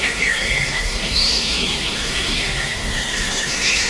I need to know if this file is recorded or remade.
remade